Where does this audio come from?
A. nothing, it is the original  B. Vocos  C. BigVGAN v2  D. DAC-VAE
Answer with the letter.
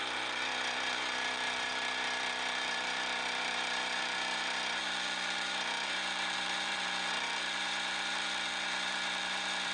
C